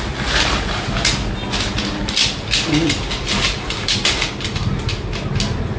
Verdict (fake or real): real